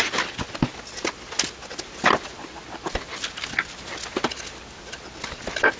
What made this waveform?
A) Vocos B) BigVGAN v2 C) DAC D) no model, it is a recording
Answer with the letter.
D